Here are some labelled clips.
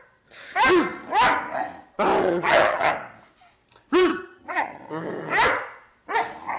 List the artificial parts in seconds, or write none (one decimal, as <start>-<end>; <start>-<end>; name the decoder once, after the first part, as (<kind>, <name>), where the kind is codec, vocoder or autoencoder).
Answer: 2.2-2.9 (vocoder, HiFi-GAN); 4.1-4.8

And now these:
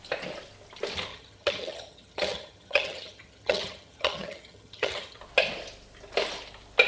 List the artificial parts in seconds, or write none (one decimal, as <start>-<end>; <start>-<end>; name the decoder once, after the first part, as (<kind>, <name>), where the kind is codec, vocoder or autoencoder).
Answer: 1.1-5.2 (vocoder, HiFi-GAN)

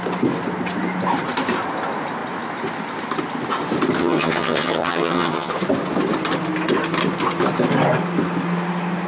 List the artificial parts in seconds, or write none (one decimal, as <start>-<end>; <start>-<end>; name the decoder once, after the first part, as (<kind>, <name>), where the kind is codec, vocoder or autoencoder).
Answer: 4.0-5.5 (vocoder, HiFi-GAN)

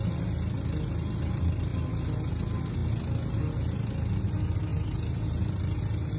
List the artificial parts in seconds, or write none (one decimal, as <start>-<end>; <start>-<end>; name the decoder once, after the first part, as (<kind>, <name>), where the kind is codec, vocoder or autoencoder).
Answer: none

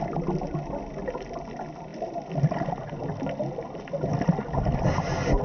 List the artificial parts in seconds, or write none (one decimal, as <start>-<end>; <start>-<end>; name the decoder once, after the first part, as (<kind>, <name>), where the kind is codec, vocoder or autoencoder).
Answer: none